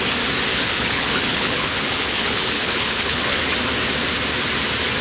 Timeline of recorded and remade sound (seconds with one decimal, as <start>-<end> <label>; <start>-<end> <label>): 0.0-0.5 recorded; 0.5-3.4 remade; 3.4-5.0 recorded